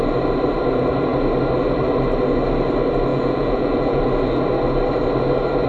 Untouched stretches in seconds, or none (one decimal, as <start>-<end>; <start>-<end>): 0.0-3.1; 4.0-5.7